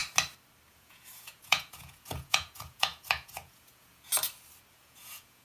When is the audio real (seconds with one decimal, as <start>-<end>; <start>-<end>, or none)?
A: 0.0-0.7; 4.1-4.7